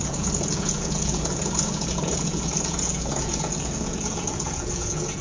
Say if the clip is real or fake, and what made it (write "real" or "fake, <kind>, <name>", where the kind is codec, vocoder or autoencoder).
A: fake, vocoder, Vocos